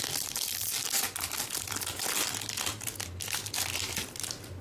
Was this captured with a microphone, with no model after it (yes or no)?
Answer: yes